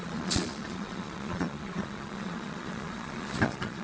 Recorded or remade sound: remade